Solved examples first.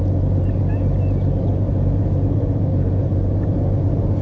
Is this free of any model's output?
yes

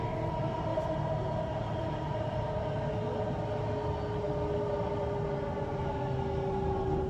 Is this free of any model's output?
yes